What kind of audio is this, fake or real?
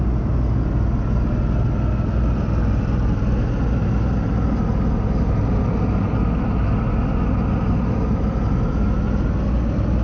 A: real